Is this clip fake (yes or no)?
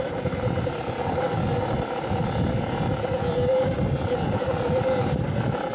no